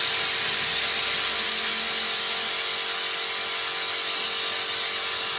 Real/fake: real